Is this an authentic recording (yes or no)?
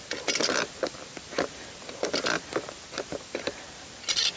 yes